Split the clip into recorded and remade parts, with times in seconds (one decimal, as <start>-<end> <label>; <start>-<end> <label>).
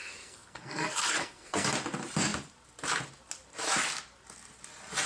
0.0-1.7 remade; 1.7-5.1 recorded